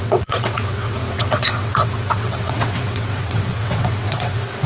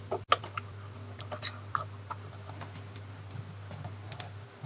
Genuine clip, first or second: second